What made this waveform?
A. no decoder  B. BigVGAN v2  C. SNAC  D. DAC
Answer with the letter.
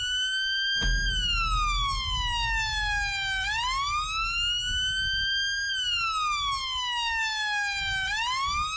A